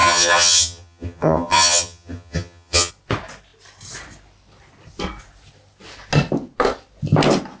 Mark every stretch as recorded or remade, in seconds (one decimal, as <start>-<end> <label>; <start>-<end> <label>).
0.0-2.9 remade; 2.9-7.6 recorded